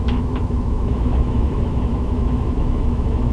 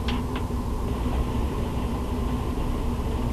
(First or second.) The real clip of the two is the second